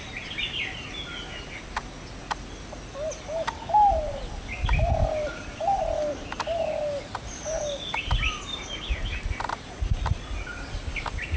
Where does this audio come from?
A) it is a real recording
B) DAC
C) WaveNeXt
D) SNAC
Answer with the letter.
A